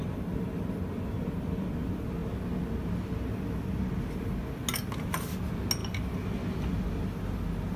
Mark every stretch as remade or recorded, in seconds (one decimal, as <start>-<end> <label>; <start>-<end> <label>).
0.0-7.8 recorded